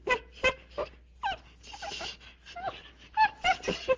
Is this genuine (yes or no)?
yes